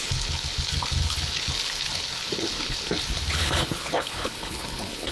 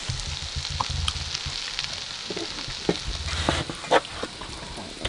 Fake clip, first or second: first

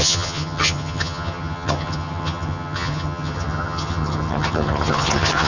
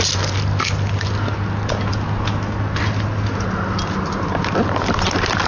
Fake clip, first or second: first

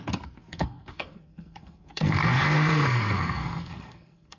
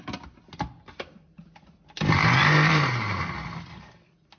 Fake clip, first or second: first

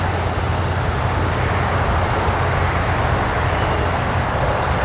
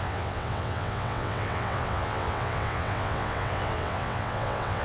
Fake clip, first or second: second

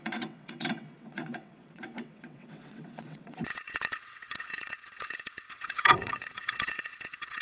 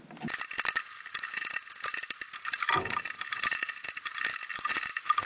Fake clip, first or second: first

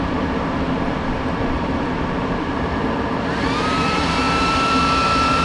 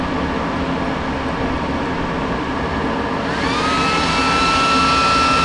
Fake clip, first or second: first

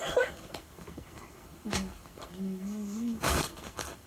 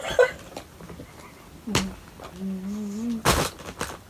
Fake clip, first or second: first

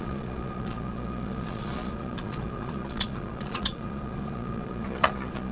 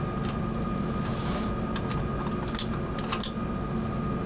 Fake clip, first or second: first